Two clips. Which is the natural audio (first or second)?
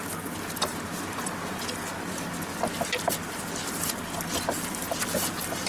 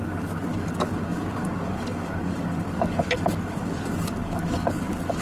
first